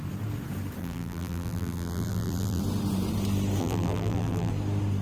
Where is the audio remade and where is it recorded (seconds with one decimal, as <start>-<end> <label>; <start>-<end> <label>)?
0.0-0.8 recorded; 0.8-2.6 remade; 2.6-3.6 recorded; 3.6-4.5 remade; 4.5-5.0 recorded